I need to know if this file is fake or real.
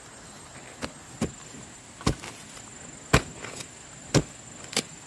real